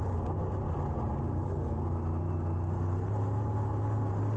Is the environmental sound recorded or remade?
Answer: recorded